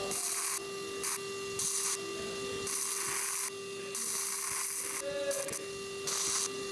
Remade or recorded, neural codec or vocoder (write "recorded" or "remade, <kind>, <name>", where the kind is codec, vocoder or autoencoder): recorded